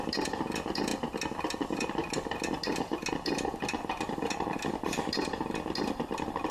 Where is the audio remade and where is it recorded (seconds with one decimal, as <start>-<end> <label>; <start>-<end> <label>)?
0.0-6.5 recorded